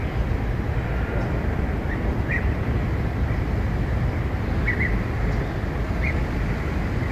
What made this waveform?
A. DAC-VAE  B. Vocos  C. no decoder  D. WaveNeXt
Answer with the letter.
C